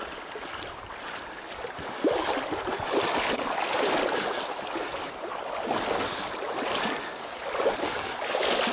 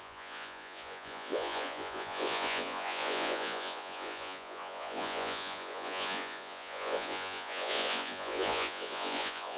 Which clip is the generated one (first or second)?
second